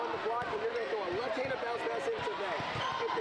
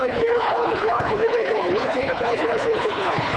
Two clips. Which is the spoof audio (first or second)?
second